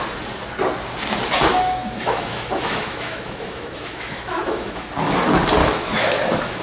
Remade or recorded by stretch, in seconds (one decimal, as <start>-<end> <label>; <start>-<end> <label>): 0.0-1.5 recorded; 1.5-4.9 remade; 4.9-5.6 recorded; 5.6-6.6 remade